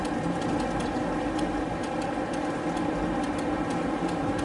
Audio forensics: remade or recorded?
recorded